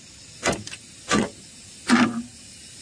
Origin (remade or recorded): recorded